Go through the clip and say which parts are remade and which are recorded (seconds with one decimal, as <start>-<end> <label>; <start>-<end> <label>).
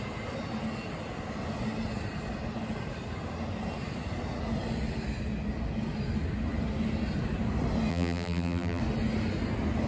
0.0-7.9 recorded; 7.9-8.8 remade; 8.8-9.9 recorded